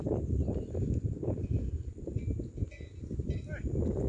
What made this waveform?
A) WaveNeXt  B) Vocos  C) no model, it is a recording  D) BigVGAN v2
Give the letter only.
C